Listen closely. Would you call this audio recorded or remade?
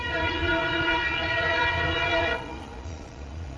remade